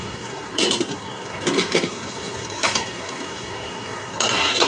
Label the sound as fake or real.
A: fake